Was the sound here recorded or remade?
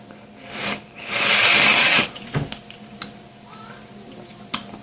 recorded